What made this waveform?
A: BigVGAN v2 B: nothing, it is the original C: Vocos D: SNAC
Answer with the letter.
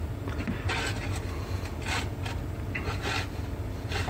B